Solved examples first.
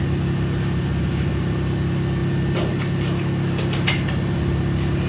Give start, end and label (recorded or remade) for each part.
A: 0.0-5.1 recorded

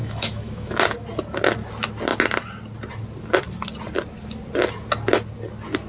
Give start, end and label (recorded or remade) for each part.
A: 0.0-0.7 remade; 0.7-5.9 recorded

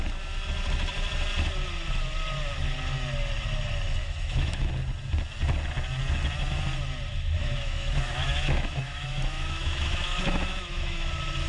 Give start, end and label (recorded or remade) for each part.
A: 0.0-4.0 recorded; 4.0-4.7 remade; 4.7-7.4 recorded; 7.4-11.1 remade; 11.1-11.5 recorded

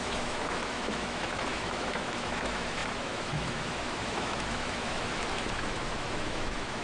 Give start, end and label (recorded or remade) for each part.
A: 0.0-6.8 remade